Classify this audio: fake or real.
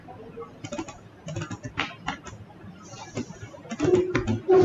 real